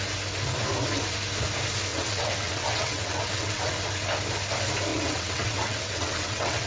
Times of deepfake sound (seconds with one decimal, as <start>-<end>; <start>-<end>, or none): 1.9-3.8; 4.9-6.7